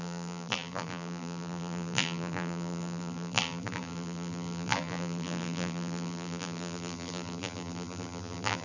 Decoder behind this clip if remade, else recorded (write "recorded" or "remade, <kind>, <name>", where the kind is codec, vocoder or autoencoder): remade, vocoder, BigVGAN v2